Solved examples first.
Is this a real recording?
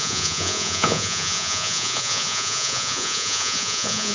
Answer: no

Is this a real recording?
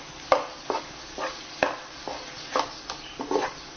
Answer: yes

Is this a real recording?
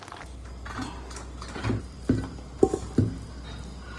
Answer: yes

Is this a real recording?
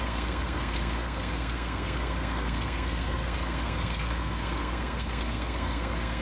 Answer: no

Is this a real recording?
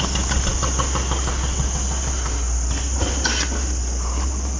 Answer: yes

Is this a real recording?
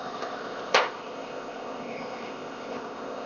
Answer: no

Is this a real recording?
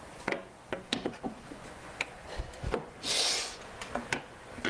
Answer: no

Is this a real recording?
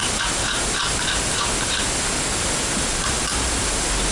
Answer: yes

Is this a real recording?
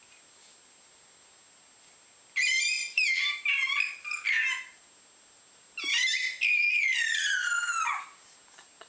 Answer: yes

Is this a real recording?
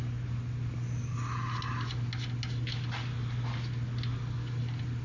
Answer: yes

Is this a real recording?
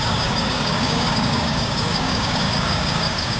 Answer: no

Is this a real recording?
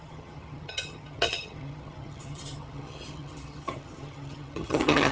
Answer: no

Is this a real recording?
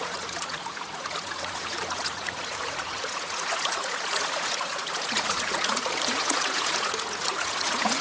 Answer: no